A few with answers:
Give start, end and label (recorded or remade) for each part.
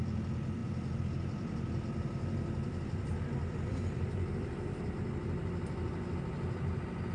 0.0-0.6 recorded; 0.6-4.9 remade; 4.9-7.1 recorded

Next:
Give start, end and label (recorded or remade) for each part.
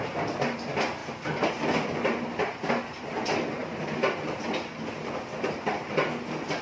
0.0-3.6 recorded; 3.6-6.6 remade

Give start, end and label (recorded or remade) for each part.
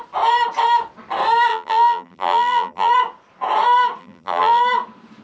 0.0-1.5 recorded; 1.5-2.9 remade; 2.9-4.0 recorded; 4.0-4.6 remade; 4.6-5.2 recorded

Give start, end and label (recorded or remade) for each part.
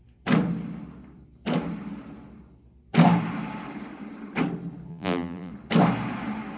0.0-4.9 recorded; 4.9-5.5 remade; 5.5-6.6 recorded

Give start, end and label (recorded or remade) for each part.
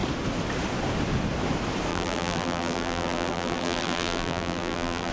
0.0-1.9 recorded; 1.9-5.1 remade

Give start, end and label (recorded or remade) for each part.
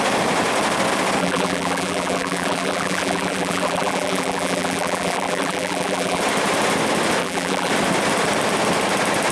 0.0-1.2 recorded; 1.2-6.2 remade; 6.2-7.2 recorded; 7.2-7.7 remade; 7.7-9.3 recorded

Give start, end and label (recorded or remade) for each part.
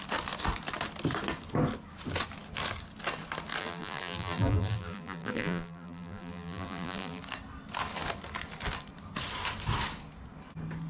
0.0-3.6 recorded; 3.6-7.2 remade; 7.2-10.9 recorded